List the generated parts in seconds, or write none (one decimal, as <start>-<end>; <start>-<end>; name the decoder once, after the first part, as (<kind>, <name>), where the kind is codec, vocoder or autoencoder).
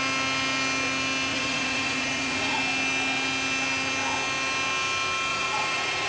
1.3-2.6 (vocoder, Vocos); 5.3-6.1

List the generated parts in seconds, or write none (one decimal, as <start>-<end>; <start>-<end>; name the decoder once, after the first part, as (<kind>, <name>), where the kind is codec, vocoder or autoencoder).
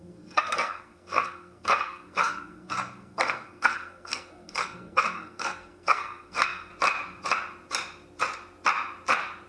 0.0-6.7 (codec, SNAC)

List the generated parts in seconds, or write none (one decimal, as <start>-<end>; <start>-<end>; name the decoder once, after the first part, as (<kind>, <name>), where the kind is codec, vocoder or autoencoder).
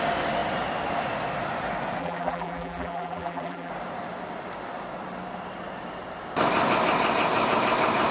2.0-3.7 (vocoder, BigVGAN v2)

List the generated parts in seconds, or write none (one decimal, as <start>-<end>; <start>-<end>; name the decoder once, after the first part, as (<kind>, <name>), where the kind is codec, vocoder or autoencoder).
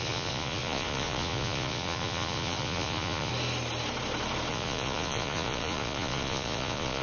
0.0-3.3 (vocoder, Vocos); 4.5-7.0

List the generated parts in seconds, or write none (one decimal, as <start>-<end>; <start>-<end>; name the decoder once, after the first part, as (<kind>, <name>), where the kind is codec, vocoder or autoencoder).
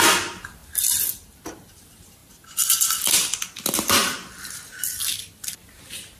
none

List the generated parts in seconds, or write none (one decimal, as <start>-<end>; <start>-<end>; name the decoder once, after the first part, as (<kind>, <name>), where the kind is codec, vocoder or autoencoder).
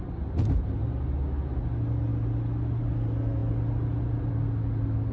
none